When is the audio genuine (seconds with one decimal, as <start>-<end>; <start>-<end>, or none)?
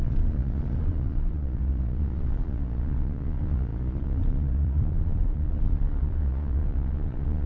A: none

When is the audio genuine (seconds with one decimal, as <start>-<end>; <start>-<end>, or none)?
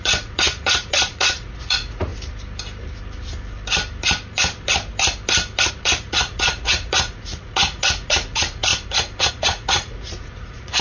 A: 2.1-5.7; 8.7-9.3